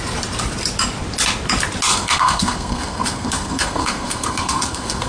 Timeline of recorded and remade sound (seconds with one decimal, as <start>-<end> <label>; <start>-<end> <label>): 0.0-1.9 recorded; 1.9-5.1 remade